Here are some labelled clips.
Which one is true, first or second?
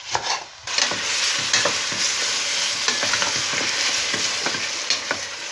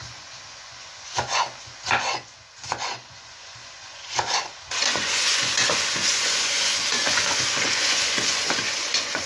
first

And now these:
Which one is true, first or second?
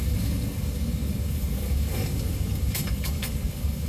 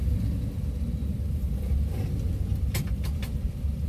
second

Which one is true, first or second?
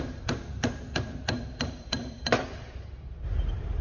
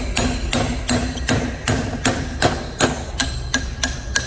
second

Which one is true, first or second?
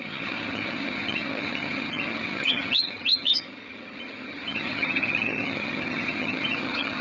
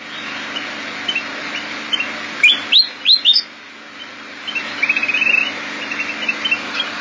second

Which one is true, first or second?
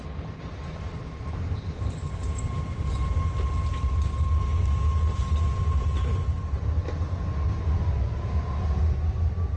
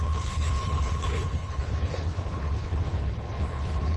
first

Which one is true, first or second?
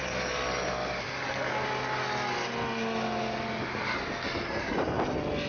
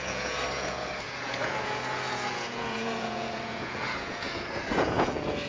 first